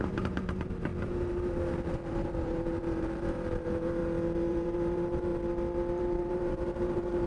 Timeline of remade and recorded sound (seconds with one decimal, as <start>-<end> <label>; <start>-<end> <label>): 0.0-0.9 remade; 0.9-2.1 recorded; 2.1-4.0 remade; 4.0-4.5 recorded; 4.5-5.3 remade; 5.3-6.0 recorded; 6.0-7.3 remade